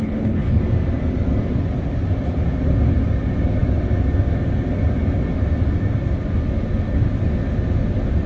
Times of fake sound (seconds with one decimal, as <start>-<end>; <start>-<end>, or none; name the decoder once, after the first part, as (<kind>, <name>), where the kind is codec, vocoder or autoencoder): 0.0-0.6 (codec, HILCodec)